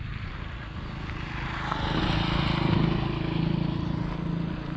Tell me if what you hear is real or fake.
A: real